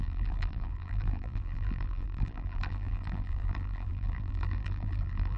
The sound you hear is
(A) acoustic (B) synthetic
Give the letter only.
B